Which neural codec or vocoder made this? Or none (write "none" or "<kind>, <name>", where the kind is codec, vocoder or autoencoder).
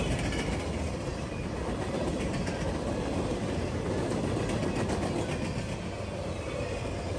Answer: none